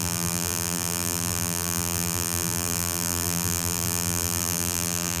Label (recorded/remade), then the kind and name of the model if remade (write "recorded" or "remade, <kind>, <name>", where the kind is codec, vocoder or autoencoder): remade, vocoder, BigVGAN v2